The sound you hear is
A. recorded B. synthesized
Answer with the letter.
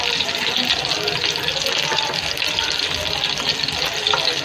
A